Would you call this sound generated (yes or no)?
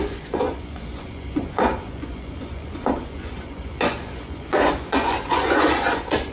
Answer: yes